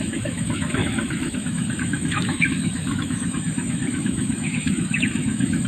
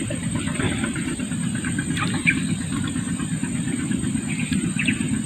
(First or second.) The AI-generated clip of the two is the first